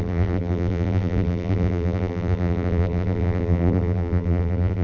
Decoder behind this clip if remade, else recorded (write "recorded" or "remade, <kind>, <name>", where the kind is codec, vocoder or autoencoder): remade, vocoder, BigVGAN v2